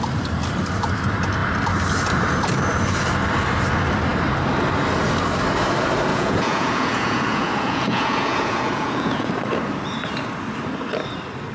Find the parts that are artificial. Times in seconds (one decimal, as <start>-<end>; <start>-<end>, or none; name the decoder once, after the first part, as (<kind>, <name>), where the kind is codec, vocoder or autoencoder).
6.1-9.3 (vocoder, Vocos)